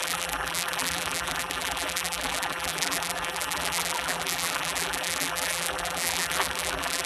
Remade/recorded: remade